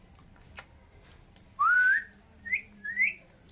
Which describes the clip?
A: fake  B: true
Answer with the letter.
B